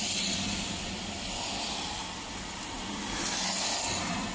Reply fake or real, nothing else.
real